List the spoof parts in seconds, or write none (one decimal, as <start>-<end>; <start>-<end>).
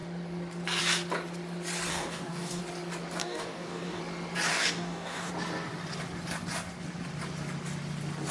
1.9-2.6; 3.2-4.0; 4.5-5.3